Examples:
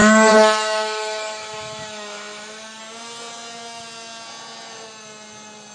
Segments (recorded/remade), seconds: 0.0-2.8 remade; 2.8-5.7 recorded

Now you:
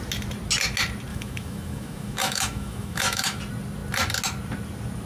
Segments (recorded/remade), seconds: 0.0-1.1 recorded; 1.1-3.4 remade; 3.4-5.1 recorded